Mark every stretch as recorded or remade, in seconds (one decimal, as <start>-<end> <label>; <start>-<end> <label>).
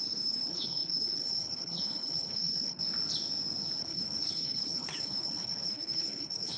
0.0-2.8 remade; 2.8-3.8 recorded; 3.8-6.6 remade